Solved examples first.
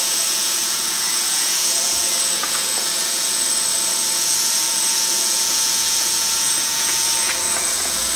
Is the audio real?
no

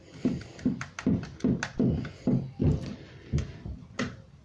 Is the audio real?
yes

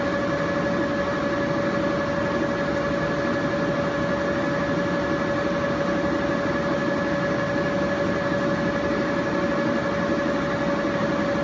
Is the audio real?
yes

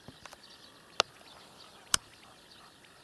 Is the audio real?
yes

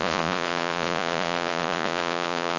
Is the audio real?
no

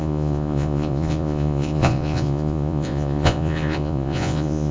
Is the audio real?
no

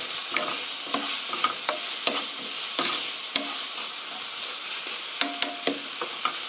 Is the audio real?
yes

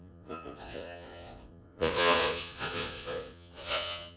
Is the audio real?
no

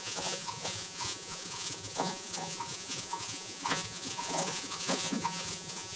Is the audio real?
no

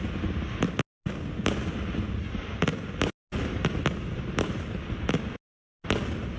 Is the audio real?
yes